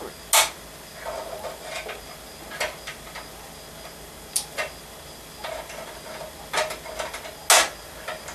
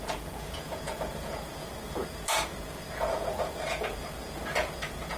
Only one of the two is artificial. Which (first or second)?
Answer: second